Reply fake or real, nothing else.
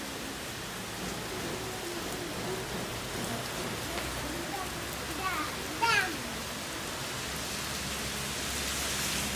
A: real